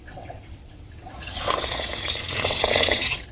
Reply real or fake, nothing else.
fake